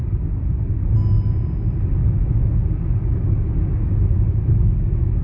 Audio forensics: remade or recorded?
recorded